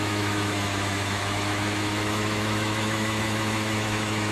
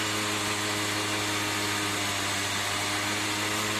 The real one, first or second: second